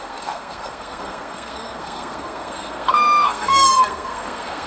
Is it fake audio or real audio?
fake